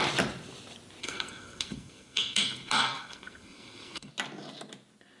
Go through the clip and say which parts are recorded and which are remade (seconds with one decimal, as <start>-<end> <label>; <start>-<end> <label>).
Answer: 0.0-1.0 recorded; 1.0-4.1 remade; 4.1-5.2 recorded